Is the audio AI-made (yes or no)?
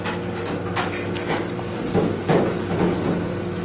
no